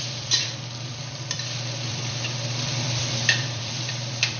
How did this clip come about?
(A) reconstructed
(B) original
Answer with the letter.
A